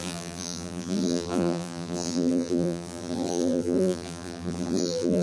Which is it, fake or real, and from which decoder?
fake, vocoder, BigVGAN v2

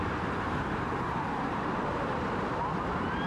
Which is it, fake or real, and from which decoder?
fake, vocoder, BigVGAN v2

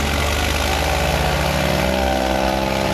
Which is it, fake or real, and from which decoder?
real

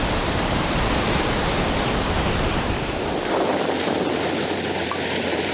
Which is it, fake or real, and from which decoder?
fake, vocoder, BigVGAN v2